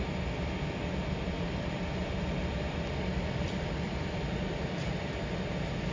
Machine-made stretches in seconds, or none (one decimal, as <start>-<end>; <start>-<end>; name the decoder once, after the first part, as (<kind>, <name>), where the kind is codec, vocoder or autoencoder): 2.0-5.0 (vocoder, BigVGAN v2)